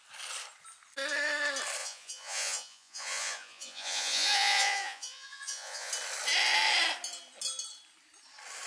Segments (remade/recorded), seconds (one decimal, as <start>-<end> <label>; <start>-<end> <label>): 0.0-1.8 recorded; 1.8-5.9 remade; 5.9-8.7 recorded

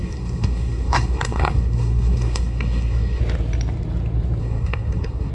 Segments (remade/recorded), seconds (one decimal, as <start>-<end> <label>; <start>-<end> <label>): 0.0-3.2 remade; 3.2-4.4 recorded; 4.4-5.3 remade

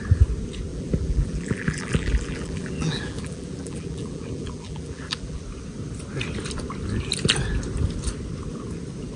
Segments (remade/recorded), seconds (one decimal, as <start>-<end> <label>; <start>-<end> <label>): 0.0-0.7 recorded; 0.7-5.4 remade; 5.4-9.2 recorded

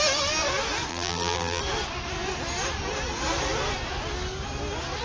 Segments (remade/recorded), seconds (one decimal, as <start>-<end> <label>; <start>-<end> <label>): 0.0-0.9 recorded; 0.9-1.6 remade; 1.6-5.0 recorded

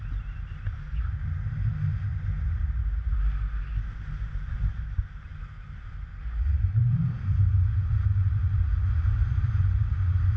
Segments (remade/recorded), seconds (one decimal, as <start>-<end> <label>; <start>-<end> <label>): 0.0-10.4 recorded

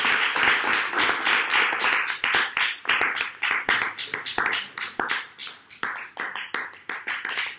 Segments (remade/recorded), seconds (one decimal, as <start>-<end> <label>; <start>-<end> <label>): 0.0-7.6 recorded

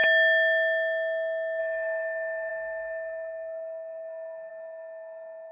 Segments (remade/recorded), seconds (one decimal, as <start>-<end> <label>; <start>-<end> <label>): 0.0-1.6 recorded; 1.6-5.5 remade